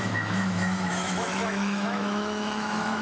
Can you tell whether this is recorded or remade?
remade